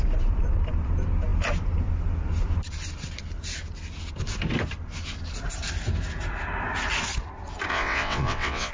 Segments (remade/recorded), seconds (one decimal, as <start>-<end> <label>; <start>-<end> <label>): 0.0-7.7 recorded; 7.7-8.7 remade